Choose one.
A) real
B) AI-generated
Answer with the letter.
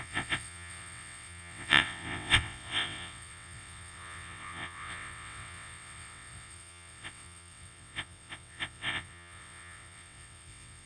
B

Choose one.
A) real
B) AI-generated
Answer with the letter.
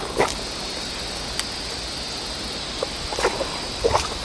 A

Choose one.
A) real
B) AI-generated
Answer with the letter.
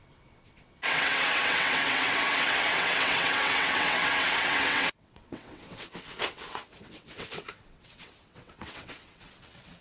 B